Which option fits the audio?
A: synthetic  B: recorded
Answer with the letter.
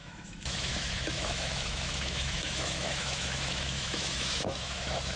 A